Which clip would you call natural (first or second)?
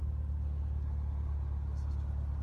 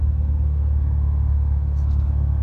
first